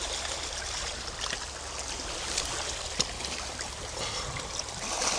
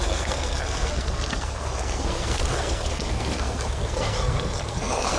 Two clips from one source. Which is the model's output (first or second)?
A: second